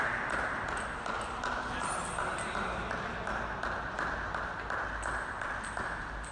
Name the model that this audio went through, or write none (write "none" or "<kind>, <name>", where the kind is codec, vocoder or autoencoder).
none